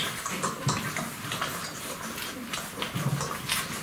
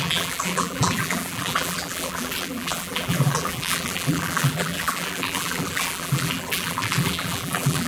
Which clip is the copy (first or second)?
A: second